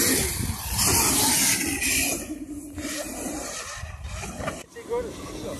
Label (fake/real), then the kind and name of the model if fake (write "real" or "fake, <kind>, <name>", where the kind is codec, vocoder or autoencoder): real